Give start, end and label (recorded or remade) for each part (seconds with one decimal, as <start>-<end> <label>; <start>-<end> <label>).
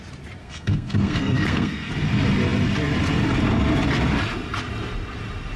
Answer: 0.0-0.4 recorded; 0.4-1.9 remade; 1.9-5.6 recorded